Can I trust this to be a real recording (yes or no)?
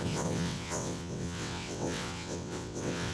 no